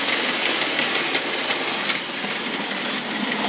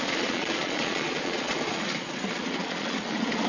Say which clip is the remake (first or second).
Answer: second